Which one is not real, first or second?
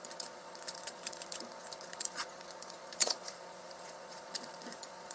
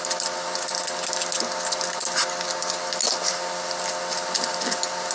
first